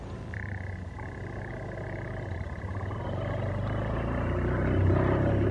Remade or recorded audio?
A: recorded